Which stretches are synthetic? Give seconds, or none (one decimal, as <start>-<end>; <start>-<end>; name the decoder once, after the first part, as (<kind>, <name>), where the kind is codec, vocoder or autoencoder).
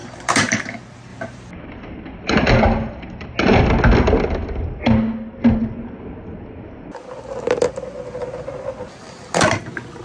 0.0-0.7 (vocoder, BigVGAN v2); 1.1-2.5